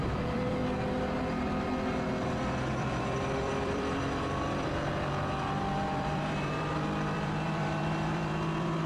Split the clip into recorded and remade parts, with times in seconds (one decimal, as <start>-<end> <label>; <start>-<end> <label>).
0.0-0.6 remade; 0.6-2.4 recorded; 2.4-8.9 remade